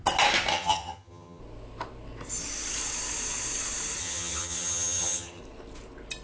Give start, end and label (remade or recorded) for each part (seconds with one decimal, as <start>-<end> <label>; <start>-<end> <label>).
0.0-0.5 recorded; 0.5-1.4 remade; 1.4-4.0 recorded; 4.0-5.4 remade; 5.4-6.2 recorded